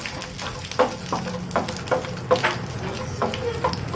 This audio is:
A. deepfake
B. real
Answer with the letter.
B